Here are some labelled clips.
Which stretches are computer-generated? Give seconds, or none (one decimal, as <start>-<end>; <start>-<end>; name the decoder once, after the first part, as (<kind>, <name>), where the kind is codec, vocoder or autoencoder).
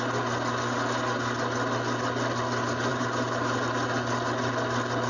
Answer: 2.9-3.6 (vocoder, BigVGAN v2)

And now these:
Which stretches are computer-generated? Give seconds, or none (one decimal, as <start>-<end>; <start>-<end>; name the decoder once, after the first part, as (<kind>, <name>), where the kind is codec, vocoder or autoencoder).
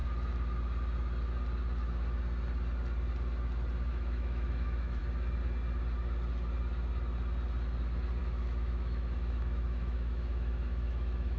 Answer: 3.9-5.0 (autoencoder, DAC-VAE); 8.2-11.4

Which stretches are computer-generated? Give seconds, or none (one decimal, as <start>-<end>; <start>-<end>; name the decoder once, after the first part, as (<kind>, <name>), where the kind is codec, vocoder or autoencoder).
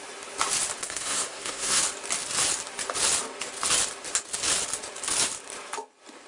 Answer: 0.8-1.8 (codec, SNAC)